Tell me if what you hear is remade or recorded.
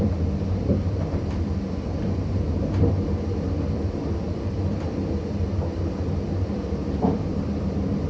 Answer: remade